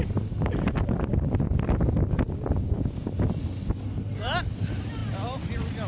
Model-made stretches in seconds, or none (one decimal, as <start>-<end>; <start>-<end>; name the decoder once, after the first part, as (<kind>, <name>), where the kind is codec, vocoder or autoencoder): 0.0-1.1 (vocoder, BigVGAN v2); 4.6-5.0